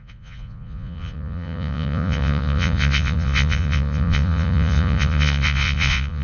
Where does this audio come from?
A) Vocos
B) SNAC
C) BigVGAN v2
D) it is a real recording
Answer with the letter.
A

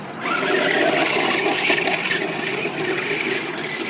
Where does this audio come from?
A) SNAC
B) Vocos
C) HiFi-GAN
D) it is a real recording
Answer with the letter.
D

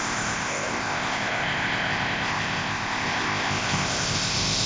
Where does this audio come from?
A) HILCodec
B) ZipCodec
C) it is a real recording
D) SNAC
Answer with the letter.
B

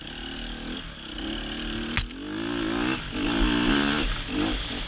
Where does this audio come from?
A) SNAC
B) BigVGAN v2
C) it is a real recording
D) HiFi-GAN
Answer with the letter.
C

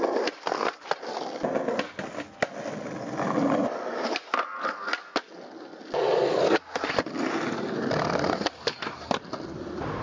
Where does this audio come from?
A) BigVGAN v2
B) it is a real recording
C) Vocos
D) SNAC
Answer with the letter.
B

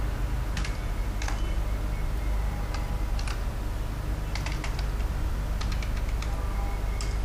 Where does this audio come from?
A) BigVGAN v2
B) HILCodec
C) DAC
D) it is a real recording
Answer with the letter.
D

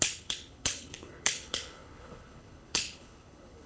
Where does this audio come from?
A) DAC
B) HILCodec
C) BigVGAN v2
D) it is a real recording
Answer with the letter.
B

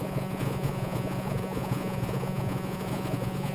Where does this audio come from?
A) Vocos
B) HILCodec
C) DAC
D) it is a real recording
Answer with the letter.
A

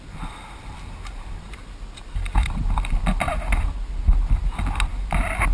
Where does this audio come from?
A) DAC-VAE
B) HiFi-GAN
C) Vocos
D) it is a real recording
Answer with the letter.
D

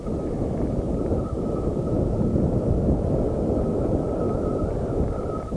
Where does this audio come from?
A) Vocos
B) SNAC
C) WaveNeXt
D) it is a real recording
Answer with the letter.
D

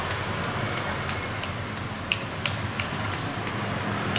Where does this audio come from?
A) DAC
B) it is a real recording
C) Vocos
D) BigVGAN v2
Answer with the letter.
B